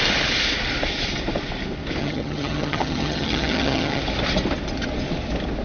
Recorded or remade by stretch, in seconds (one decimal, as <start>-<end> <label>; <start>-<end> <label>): 0.0-2.0 recorded; 2.0-4.0 remade; 4.0-5.6 recorded